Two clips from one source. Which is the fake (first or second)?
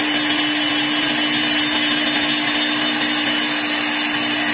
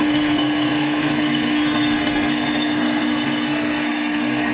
second